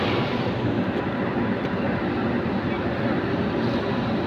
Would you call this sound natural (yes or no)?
yes